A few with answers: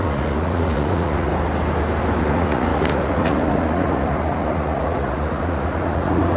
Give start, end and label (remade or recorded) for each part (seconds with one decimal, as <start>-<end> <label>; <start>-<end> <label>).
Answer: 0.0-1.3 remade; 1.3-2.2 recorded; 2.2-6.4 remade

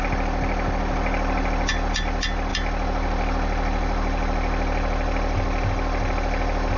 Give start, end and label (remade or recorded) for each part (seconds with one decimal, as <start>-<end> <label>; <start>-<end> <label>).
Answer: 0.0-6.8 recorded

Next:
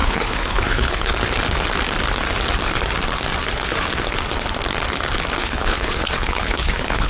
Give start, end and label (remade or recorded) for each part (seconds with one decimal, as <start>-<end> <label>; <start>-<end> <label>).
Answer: 0.0-1.1 remade; 1.1-5.4 recorded; 5.4-7.1 remade

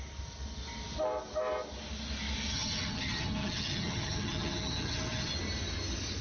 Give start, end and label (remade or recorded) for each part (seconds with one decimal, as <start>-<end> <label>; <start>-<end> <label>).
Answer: 0.0-2.5 recorded; 2.5-5.3 remade; 5.3-6.2 recorded